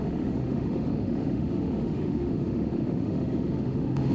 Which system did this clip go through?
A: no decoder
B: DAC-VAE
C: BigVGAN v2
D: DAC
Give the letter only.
B